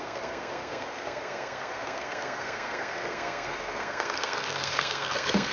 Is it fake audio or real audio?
fake